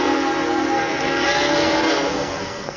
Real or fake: fake